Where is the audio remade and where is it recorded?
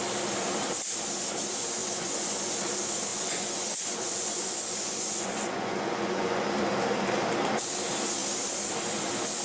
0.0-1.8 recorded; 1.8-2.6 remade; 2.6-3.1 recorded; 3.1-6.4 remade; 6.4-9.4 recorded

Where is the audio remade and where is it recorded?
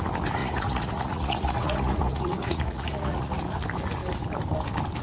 0.0-0.4 recorded; 0.4-3.4 remade; 3.4-5.0 recorded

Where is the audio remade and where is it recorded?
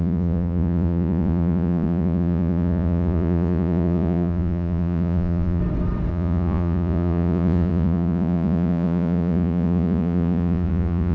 0.0-5.6 remade; 5.6-6.1 recorded; 6.1-11.1 remade